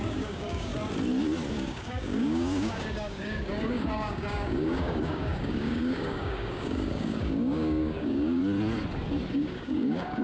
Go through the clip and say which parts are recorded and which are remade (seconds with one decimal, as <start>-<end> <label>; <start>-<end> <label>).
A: 0.0-0.7 remade; 0.7-1.5 recorded; 1.5-8.4 remade; 8.4-9.3 recorded; 9.3-10.2 remade